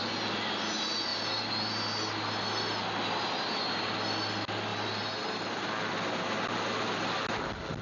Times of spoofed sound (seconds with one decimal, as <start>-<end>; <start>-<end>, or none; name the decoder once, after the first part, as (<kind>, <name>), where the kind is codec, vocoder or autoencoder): none